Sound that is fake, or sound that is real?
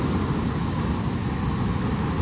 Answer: real